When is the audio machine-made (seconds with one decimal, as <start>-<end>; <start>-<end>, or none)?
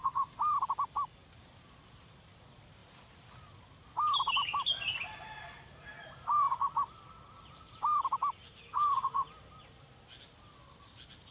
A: none